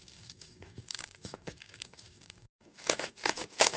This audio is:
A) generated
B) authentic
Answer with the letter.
A